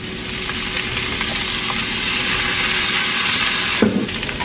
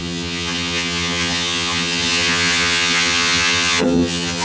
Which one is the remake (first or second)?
second